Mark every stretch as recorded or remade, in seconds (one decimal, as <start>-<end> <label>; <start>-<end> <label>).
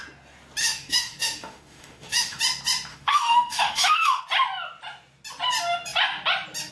0.0-0.6 recorded; 0.6-2.4 remade; 2.4-2.9 recorded; 2.9-4.2 remade; 4.2-6.7 recorded